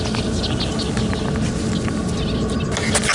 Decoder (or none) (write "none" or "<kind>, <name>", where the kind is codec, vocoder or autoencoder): none